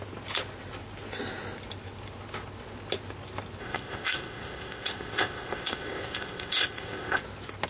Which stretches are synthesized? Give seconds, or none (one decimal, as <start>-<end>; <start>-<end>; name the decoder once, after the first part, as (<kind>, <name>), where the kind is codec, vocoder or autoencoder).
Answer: 3.6-7.2 (codec, ZipCodec)